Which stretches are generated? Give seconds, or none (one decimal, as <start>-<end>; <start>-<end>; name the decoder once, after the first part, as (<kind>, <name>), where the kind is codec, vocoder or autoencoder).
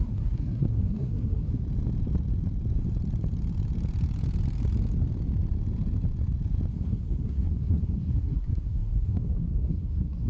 0.0-1.6 (codec, SNAC); 6.7-10.3